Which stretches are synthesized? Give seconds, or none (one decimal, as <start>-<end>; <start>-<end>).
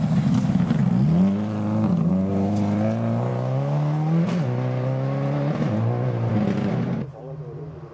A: none